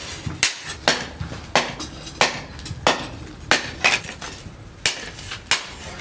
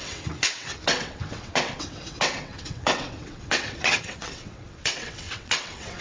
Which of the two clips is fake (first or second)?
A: second